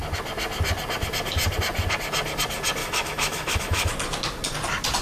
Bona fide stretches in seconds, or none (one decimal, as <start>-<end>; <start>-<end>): 0.0-2.8; 3.9-5.0